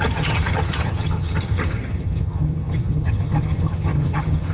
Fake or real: fake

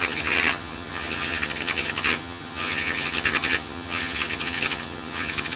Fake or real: fake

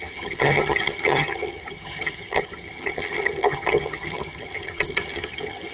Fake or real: fake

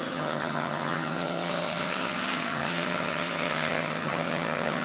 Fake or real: fake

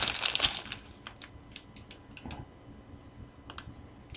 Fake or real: real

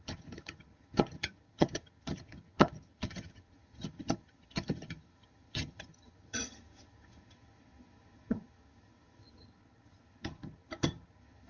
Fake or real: fake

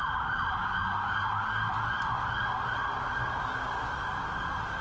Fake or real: real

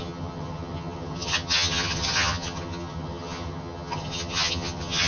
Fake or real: fake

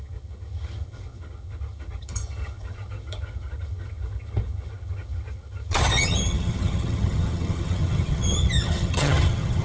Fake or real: fake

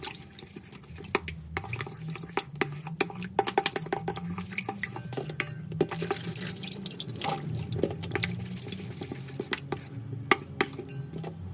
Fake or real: real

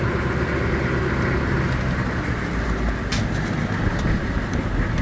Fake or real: real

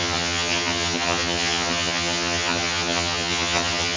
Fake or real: fake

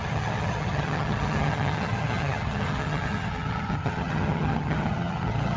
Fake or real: fake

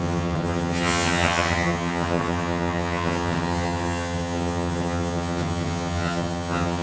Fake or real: fake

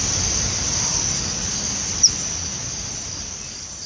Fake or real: real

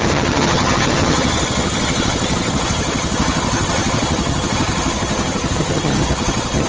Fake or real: fake